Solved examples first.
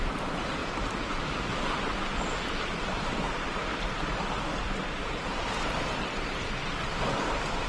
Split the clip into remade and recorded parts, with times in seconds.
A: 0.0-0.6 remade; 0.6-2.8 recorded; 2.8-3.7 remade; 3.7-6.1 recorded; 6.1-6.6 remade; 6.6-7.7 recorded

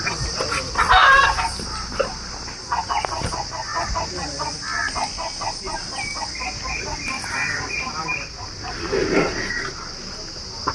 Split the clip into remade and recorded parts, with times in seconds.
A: 0.0-1.0 recorded; 1.0-2.3 remade; 2.3-10.7 recorded

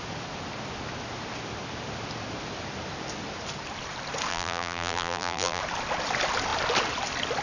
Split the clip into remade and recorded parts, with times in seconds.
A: 0.0-4.3 recorded; 4.3-5.6 remade; 5.6-7.4 recorded

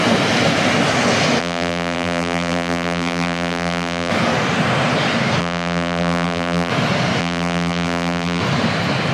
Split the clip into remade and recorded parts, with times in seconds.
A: 0.0-1.4 recorded; 1.4-4.1 remade; 4.1-5.4 recorded; 5.4-6.7 remade; 6.7-7.2 recorded; 7.2-8.4 remade; 8.4-9.1 recorded

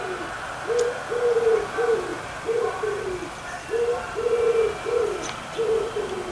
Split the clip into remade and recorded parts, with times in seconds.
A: 0.0-2.1 recorded; 2.1-6.3 remade